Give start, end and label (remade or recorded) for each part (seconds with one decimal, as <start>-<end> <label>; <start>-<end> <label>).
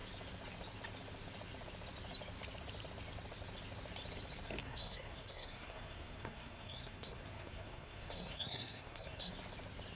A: 0.0-4.6 recorded; 4.6-9.3 remade; 9.3-10.0 recorded